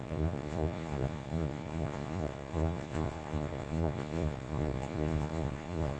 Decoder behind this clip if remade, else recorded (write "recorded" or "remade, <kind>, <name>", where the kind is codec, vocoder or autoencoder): remade, vocoder, Vocos